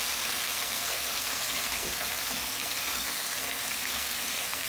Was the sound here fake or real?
fake